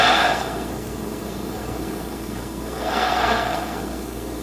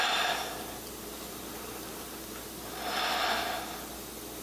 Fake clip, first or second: first